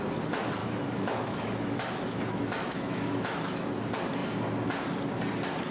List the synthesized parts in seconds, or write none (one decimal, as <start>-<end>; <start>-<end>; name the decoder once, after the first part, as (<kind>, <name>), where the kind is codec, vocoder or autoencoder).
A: 0.6-3.7 (autoencoder, DAC-VAE)